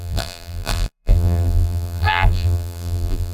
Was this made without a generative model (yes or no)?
no